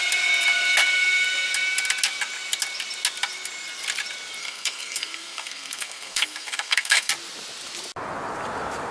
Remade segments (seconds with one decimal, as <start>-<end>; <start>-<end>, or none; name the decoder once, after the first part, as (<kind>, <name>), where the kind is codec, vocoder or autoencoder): 4.4-7.1 (codec, SNAC)